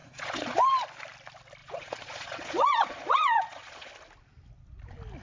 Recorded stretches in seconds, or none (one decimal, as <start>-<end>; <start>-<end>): 0.6-1.6; 3.9-5.2